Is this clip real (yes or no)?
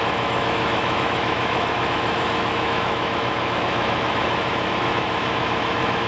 no